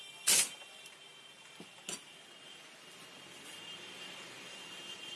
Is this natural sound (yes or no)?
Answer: yes